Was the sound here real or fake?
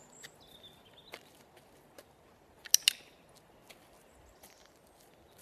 real